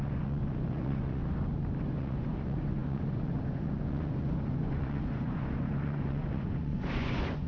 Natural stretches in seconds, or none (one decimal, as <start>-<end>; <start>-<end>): 1.2-1.8